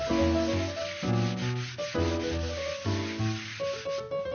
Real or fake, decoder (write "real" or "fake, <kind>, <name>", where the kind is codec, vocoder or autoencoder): real